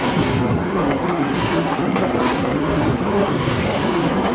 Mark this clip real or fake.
fake